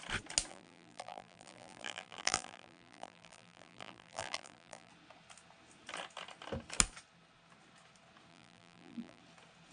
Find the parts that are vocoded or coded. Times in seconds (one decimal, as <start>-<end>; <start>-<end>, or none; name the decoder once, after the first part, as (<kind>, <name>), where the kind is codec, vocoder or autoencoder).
0.5-4.9 (vocoder, BigVGAN v2); 8.3-9.2